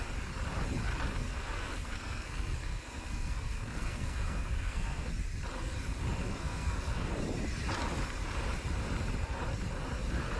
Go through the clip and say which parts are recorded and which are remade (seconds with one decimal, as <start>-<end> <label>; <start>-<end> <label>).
0.0-1.2 recorded; 1.2-5.1 remade; 5.1-6.2 recorded; 6.2-7.1 remade; 7.1-10.4 recorded